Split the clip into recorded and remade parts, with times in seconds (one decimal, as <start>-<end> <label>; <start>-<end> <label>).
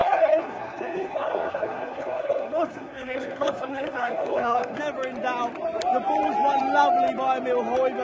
0.0-4.8 remade; 4.8-8.0 recorded